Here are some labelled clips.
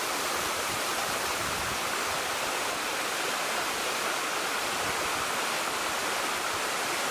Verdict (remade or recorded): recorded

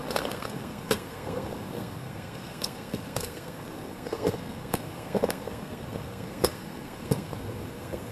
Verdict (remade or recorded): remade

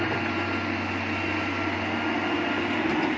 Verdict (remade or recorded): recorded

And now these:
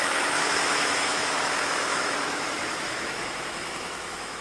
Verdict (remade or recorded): remade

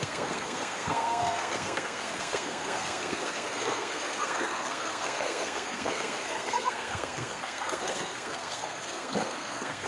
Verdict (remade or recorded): remade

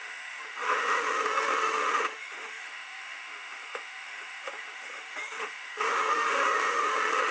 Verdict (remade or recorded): remade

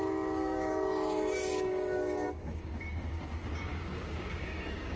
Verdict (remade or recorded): remade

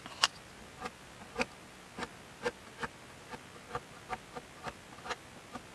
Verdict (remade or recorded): recorded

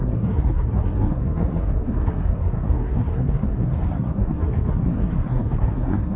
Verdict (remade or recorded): remade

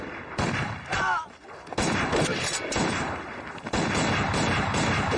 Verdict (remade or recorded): recorded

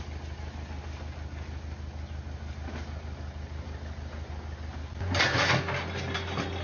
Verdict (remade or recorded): recorded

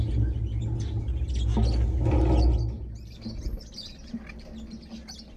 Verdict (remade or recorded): recorded